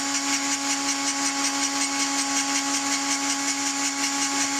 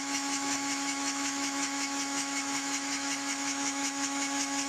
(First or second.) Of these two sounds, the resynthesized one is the second